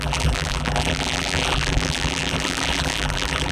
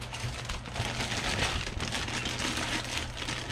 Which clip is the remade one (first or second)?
first